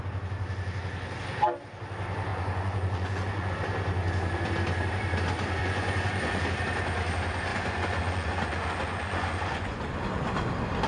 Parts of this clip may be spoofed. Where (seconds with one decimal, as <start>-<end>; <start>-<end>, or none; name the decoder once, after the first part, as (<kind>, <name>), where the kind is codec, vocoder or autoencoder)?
2.3-3.5 (vocoder, Vocos); 5.6-6.4; 7.5-10.0